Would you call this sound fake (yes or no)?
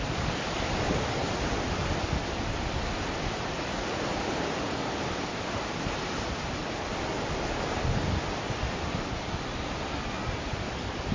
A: no